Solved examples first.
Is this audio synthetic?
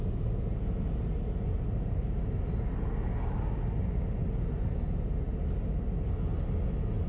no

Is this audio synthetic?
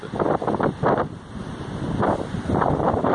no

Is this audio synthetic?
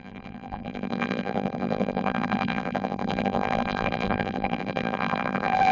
yes